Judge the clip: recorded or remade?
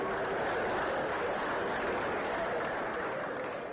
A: recorded